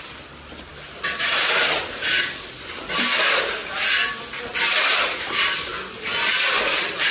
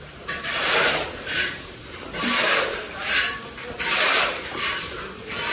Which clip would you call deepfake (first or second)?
second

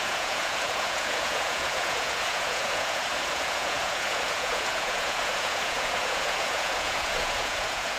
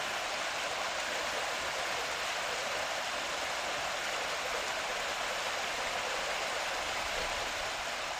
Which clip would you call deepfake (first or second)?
first